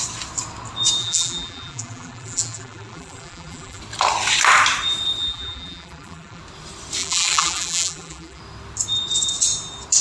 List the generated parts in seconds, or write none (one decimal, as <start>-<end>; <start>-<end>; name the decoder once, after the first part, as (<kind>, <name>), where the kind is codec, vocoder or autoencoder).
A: 1.0-3.8 (vocoder, BigVGAN v2); 5.2-6.4; 7.0-8.4